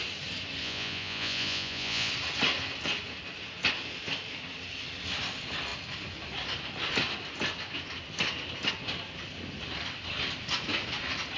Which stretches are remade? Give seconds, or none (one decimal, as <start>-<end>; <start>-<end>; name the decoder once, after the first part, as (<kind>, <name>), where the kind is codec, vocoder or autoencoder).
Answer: 0.6-2.1 (vocoder, Vocos)